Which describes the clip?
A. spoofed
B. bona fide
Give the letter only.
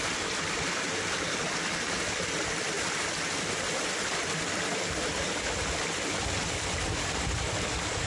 A